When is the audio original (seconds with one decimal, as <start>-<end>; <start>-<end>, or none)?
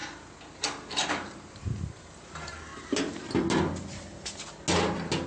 0.0-1.1; 2.7-5.3